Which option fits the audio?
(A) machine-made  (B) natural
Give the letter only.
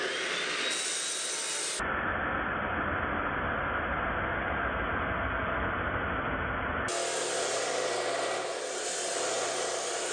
B